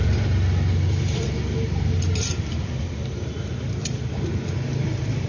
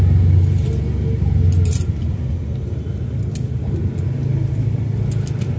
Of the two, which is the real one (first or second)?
second